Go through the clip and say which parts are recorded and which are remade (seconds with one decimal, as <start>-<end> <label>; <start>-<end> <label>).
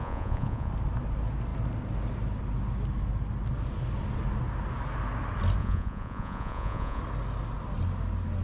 0.0-0.7 remade; 0.7-5.6 recorded; 5.6-7.0 remade; 7.0-8.4 recorded